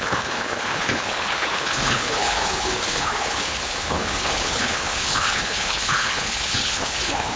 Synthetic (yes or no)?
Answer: yes